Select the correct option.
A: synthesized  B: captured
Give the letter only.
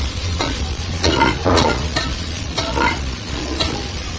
A